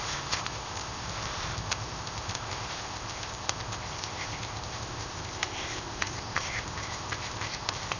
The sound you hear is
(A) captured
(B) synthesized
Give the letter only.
B